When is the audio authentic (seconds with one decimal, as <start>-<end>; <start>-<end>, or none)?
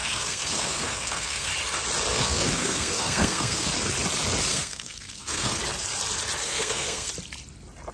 1.5-2.1; 3.7-4.5; 5.6-6.4; 7.1-7.9